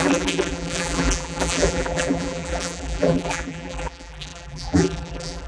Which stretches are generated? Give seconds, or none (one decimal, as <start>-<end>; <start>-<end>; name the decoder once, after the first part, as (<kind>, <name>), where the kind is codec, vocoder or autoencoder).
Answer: 0.0-5.5 (vocoder, BigVGAN v2)